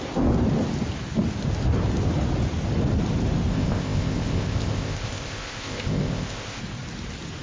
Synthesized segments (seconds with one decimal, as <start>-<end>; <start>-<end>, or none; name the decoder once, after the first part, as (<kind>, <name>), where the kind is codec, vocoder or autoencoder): 3.5-6.6 (codec, ZipCodec)